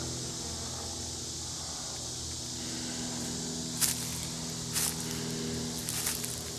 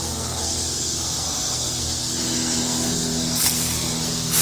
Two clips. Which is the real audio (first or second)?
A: first